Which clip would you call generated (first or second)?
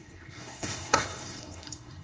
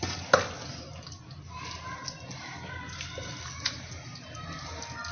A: first